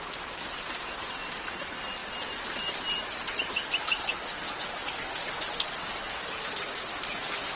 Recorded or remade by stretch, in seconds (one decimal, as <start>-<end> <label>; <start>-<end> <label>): 0.0-4.8 recorded; 4.8-5.9 remade; 5.9-7.6 recorded